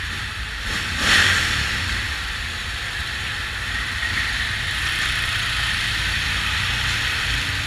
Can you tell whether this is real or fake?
fake